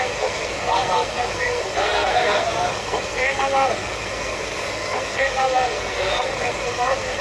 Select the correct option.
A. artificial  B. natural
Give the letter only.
A